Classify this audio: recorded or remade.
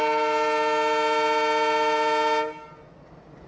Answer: recorded